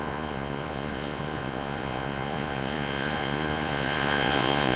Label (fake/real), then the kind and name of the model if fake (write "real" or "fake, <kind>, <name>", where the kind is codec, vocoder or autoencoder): fake, vocoder, Vocos